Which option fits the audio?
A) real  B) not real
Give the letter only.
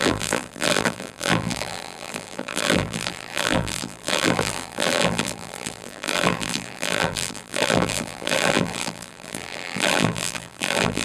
B